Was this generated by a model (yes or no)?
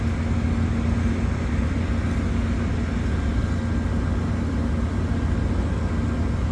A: no